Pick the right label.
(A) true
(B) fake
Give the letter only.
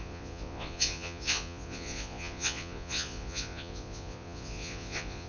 B